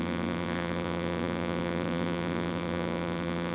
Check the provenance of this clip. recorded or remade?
remade